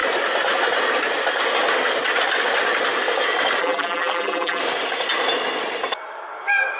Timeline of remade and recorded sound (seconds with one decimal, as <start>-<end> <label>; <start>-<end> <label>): 0.0-3.6 recorded; 3.6-4.6 remade; 4.6-6.8 recorded